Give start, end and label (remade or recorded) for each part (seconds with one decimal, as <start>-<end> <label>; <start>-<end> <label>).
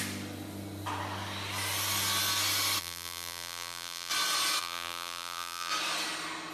0.0-2.8 recorded; 2.8-4.1 remade; 4.1-4.6 recorded; 4.6-5.7 remade; 5.7-6.5 recorded